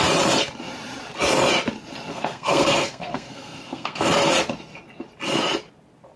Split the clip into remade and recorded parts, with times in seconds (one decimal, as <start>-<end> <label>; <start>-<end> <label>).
0.0-2.1 recorded; 2.1-4.1 remade; 4.1-6.2 recorded